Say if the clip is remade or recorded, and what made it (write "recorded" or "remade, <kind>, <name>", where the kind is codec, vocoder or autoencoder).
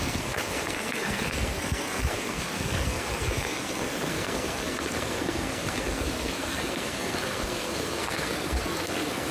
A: remade, codec, SNAC